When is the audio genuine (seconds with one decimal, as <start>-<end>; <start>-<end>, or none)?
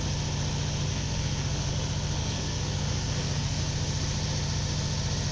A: 0.0-0.9; 1.7-2.2; 3.6-5.3